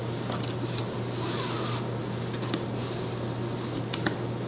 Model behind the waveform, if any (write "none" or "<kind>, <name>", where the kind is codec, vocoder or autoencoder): none